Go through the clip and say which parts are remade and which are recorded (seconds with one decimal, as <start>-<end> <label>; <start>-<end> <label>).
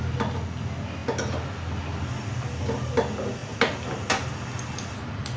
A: 0.0-5.4 recorded